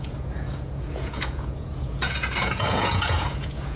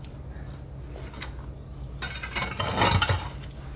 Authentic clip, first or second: second